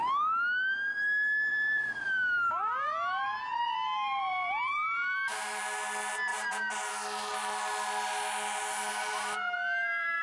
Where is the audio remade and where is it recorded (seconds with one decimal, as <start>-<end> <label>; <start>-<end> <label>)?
0.0-1.5 recorded; 1.5-5.6 remade; 5.6-6.3 recorded; 6.3-6.9 remade; 6.9-8.9 recorded; 8.9-10.2 remade